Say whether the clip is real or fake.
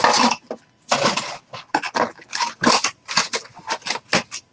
real